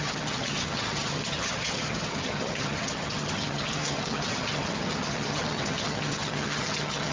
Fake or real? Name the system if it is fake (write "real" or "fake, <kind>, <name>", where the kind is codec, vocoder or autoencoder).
fake, vocoder, HiFi-GAN